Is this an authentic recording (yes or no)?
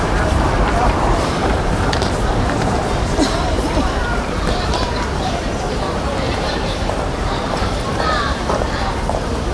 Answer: no